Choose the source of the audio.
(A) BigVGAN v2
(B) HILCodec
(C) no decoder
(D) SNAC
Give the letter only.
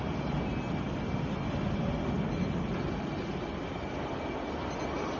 C